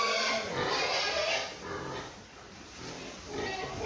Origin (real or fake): real